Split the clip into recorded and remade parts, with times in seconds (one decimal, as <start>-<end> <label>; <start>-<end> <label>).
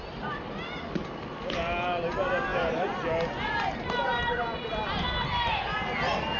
0.0-6.4 recorded